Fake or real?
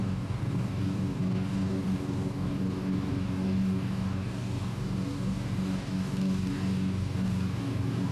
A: fake